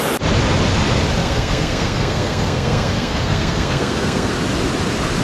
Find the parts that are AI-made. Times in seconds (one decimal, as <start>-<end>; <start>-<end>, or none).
1.2-4.3